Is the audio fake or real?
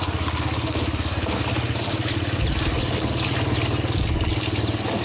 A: real